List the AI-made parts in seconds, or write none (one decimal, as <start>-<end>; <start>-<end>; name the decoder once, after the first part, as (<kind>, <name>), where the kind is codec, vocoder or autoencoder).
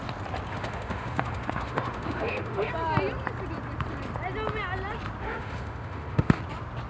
0.5-2.7 (autoencoder, DAC-VAE); 5.2-6.4